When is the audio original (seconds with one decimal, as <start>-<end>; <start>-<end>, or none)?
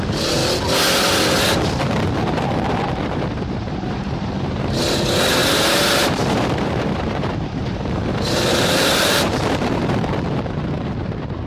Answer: 0.4-1.4